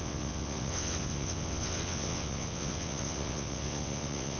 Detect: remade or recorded remade